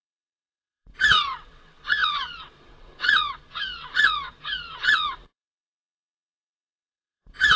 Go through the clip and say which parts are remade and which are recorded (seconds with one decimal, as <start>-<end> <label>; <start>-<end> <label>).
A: 0.0-7.6 remade